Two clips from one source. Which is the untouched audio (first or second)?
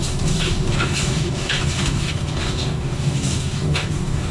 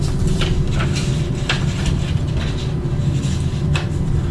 second